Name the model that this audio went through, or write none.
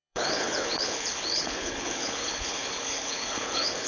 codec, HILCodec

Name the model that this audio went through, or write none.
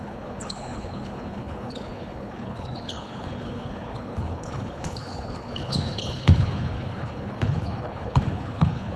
codec, HILCodec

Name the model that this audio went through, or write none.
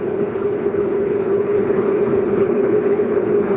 codec, HILCodec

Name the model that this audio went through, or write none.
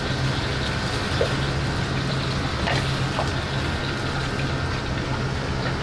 none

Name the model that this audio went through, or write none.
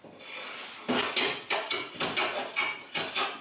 none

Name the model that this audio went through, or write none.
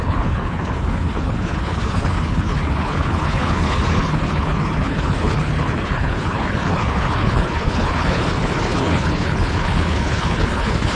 codec, HILCodec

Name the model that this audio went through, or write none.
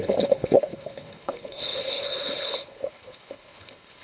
codec, HILCodec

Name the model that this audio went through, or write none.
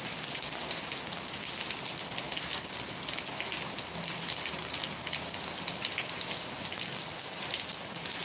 none